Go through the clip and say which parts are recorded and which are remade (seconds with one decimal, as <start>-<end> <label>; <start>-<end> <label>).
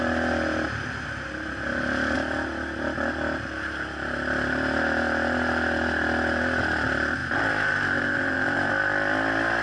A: 0.0-7.2 recorded; 7.2-8.7 remade; 8.7-9.6 recorded